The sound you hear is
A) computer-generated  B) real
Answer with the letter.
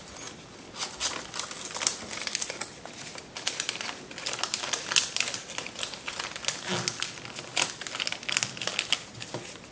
B